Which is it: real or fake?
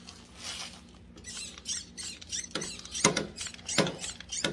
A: real